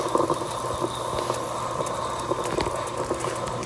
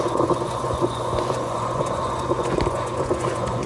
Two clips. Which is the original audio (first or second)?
first